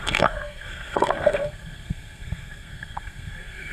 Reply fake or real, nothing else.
fake